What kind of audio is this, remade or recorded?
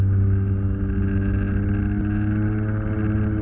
recorded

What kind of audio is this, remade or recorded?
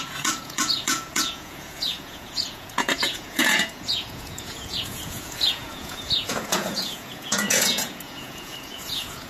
remade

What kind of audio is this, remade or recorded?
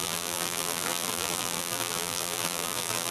remade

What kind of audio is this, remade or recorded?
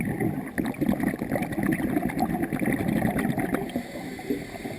recorded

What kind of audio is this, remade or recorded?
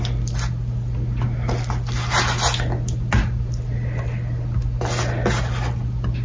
recorded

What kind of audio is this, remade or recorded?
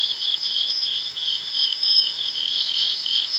remade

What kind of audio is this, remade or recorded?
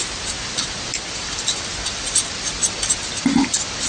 recorded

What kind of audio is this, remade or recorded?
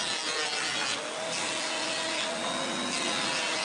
recorded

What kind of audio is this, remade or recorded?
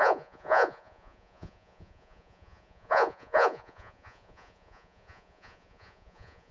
remade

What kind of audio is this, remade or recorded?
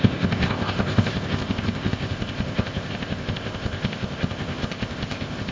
remade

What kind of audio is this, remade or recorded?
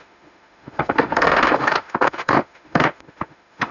remade